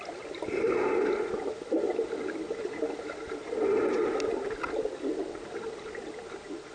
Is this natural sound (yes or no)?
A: yes